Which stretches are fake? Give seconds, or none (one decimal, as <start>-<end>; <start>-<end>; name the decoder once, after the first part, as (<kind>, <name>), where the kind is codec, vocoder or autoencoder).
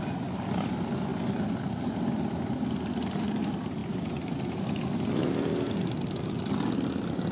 none